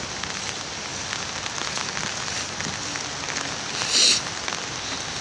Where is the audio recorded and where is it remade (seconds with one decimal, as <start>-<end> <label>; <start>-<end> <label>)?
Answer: 0.0-5.2 recorded